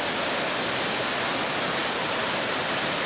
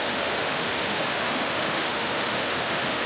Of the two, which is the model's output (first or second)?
second